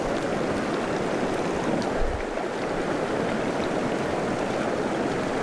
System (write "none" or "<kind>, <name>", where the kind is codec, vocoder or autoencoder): none